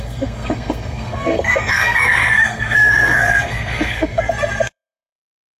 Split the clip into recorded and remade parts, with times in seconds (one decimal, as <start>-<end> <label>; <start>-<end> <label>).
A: 0.0-5.6 remade